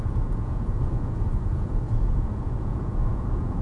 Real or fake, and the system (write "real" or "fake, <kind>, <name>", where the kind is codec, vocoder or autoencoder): fake, vocoder, Vocos